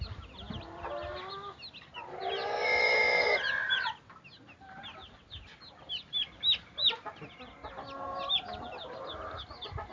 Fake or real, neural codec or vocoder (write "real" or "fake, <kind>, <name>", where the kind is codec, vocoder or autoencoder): real